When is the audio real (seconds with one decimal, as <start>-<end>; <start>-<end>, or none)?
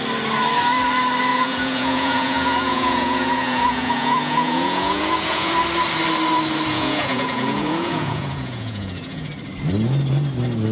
0.0-1.3; 5.5-6.7; 9.3-10.7